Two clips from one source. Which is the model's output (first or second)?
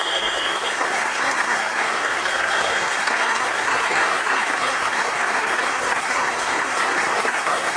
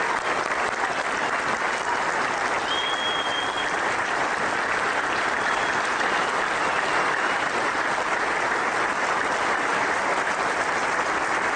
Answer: first